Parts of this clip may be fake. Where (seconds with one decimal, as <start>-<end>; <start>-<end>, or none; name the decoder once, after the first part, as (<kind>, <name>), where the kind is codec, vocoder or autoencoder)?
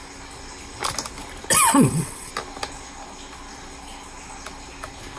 1.7-2.3 (vocoder, WaveNeXt)